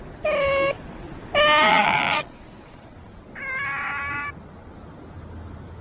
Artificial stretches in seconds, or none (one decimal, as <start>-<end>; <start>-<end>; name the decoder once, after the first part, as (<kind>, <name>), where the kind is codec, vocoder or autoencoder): 1.7-3.2 (vocoder, Vocos)